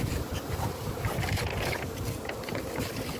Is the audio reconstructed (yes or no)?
no